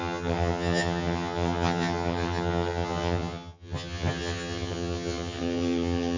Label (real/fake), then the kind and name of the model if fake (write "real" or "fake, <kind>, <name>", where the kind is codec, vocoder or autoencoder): fake, vocoder, HiFi-GAN